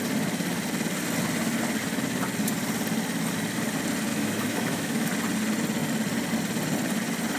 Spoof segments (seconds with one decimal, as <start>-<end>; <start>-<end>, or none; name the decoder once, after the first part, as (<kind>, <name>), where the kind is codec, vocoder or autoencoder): 4.1-5.1 (autoencoder, DAC-VAE)